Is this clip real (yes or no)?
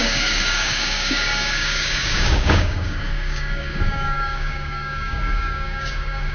no